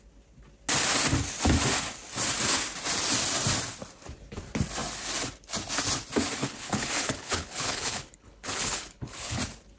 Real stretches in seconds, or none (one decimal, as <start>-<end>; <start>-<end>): 0.0-6.4; 9.4-9.8